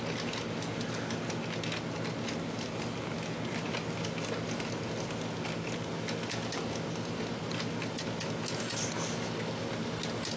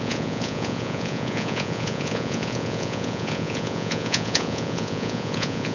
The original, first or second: first